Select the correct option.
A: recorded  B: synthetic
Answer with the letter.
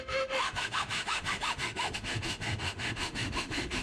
B